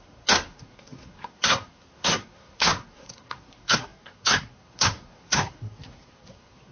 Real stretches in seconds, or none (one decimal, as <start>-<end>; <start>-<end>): none